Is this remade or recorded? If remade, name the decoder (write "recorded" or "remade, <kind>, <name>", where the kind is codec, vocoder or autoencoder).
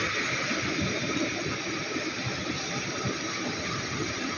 recorded